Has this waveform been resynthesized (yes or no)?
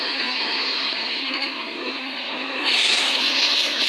yes